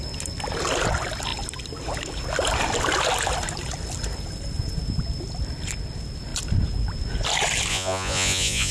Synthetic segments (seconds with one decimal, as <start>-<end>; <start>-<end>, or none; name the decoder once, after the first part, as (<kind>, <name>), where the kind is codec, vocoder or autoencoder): 7.7-8.7 (vocoder, Vocos)